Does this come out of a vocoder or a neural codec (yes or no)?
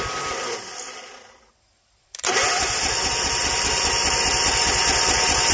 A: no